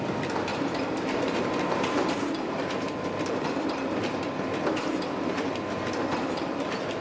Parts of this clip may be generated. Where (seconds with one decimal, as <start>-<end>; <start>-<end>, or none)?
0.5-4.7; 6.2-7.0